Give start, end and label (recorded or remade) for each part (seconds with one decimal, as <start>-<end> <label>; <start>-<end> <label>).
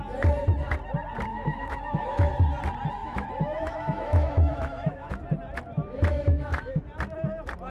0.0-1.3 recorded; 1.3-2.3 remade; 2.3-3.0 recorded; 3.0-5.2 remade; 5.2-6.1 recorded; 6.1-6.8 remade; 6.8-7.7 recorded